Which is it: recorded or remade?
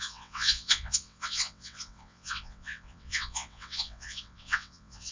remade